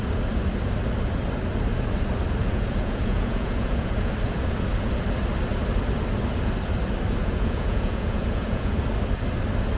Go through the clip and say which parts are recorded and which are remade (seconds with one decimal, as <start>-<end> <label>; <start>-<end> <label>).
0.0-2.4 recorded; 2.4-4.1 remade; 4.1-7.2 recorded; 7.2-8.8 remade; 8.8-9.8 recorded